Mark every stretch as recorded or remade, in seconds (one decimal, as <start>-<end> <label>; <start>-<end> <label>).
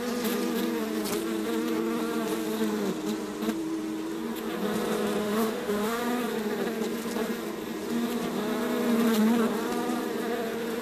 0.0-5.2 recorded; 5.2-6.0 remade; 6.0-10.8 recorded